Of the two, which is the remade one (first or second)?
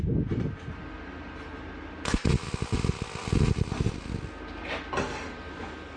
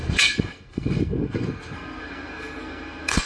second